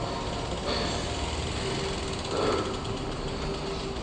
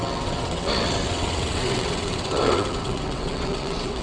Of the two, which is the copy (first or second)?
second